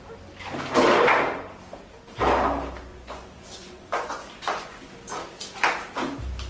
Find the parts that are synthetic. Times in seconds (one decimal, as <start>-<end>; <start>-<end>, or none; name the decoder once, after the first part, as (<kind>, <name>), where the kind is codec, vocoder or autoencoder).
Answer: 2.9-4.8 (vocoder, Vocos)